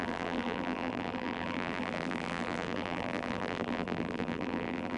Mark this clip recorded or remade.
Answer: remade